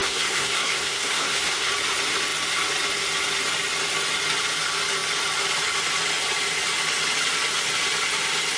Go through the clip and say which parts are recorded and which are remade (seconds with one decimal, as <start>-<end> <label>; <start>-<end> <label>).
0.0-1.7 remade; 1.7-8.6 recorded